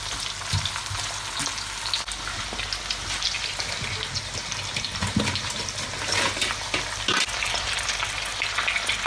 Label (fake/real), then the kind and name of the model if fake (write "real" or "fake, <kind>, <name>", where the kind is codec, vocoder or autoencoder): real